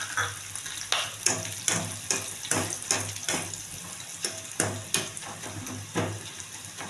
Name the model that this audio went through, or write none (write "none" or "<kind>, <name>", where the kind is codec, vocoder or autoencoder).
none